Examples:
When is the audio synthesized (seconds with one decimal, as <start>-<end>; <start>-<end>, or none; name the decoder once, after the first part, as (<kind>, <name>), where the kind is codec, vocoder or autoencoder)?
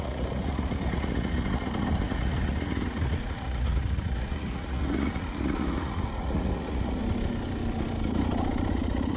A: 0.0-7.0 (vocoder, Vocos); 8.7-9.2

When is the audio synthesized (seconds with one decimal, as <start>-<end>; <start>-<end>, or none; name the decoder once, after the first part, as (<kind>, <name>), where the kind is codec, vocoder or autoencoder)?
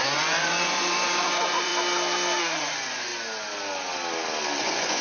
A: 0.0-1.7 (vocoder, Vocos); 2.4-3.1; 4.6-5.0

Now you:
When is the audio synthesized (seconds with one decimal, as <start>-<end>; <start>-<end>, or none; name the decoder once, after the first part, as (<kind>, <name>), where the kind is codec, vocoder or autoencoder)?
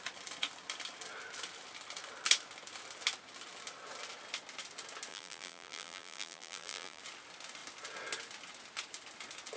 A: 5.1-7.0 (vocoder, BigVGAN v2)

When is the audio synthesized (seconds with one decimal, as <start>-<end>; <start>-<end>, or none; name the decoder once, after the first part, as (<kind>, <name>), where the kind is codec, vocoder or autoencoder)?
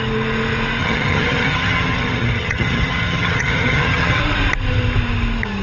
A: 0.8-4.2 (vocoder, HiFi-GAN)